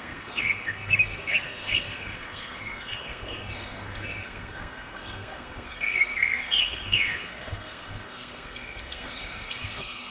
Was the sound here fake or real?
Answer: fake